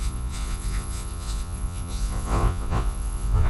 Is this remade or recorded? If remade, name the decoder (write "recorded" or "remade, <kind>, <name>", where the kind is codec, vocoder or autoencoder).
remade, vocoder, Vocos